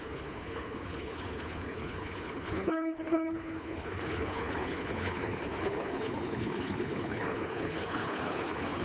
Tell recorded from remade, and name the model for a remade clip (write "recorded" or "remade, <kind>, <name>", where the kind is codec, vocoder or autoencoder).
remade, codec, HILCodec